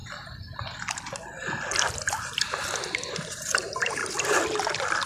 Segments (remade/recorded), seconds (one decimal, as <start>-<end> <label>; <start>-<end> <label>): 0.0-3.1 recorded; 3.1-4.0 remade; 4.0-5.1 recorded